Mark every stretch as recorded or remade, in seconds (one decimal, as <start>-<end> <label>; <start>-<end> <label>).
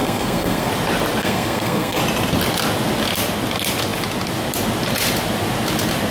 0.0-0.7 remade; 0.7-1.2 recorded; 1.2-2.0 remade; 2.0-6.1 recorded